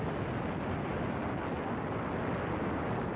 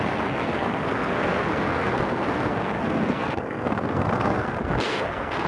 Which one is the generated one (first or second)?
second